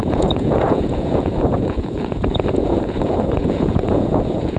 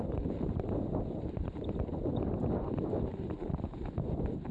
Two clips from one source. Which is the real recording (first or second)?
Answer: second